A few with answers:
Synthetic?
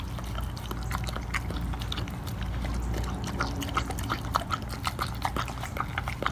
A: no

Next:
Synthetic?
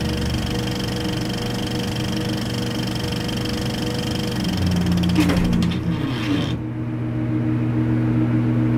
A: no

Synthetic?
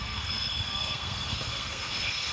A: yes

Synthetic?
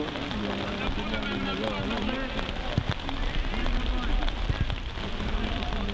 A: no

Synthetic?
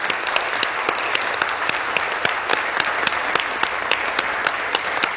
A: no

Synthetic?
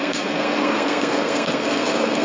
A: yes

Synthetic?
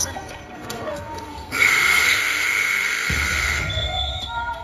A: yes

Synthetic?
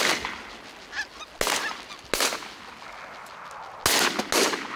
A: no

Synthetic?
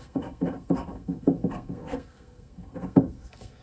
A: yes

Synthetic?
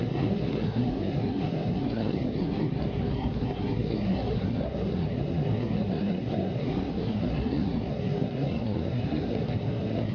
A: yes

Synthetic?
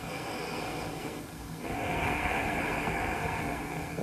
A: yes